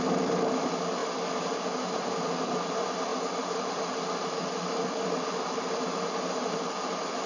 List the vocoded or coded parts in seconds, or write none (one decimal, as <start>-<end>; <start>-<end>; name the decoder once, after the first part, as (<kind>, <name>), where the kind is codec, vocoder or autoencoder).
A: none